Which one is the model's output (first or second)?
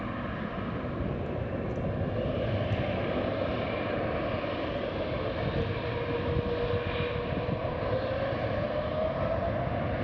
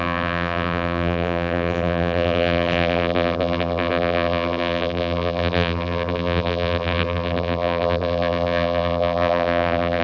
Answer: second